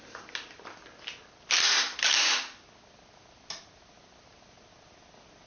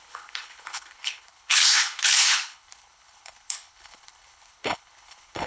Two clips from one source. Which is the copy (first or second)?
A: second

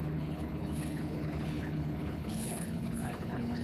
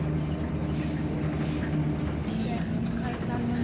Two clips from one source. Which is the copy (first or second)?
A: first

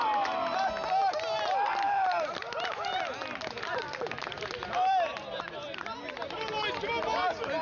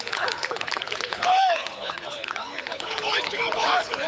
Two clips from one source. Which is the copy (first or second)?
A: second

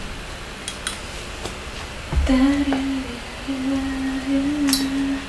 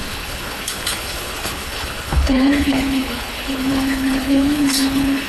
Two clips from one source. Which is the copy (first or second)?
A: second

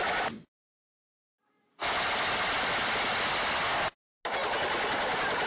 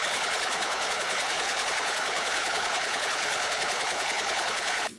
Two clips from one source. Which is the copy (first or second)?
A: second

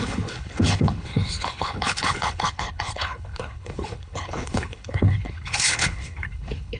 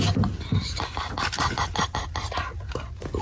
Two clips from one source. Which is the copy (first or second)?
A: first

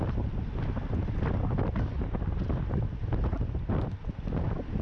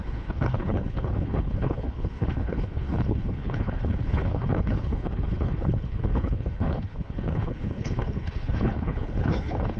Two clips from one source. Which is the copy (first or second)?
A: second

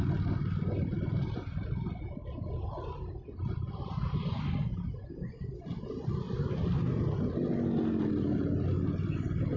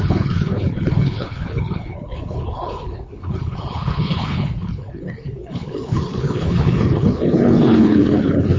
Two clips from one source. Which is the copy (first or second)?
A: second